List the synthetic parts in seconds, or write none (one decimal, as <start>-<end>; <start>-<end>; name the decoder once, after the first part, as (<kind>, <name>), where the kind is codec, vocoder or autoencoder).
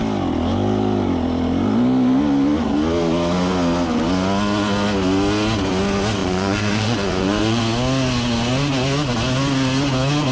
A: 6.2-7.6 (vocoder, Vocos)